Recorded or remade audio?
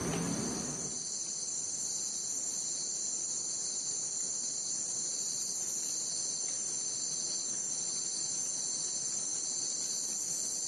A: recorded